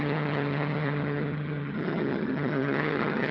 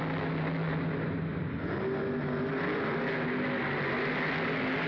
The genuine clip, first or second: second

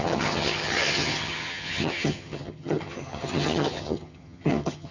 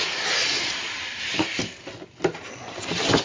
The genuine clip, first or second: second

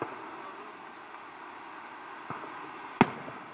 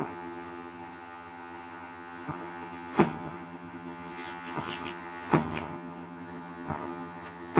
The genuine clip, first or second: first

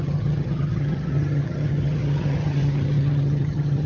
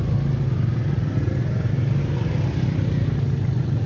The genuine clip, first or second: second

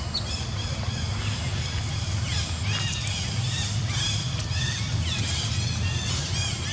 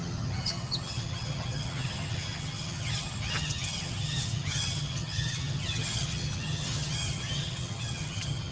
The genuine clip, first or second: first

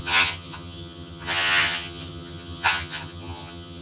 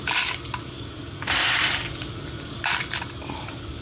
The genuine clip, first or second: second